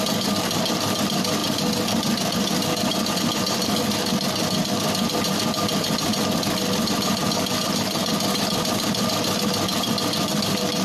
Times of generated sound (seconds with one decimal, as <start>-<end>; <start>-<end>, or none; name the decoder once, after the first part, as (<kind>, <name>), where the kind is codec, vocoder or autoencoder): none